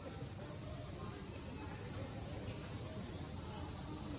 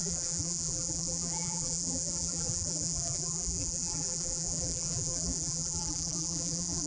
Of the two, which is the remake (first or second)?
second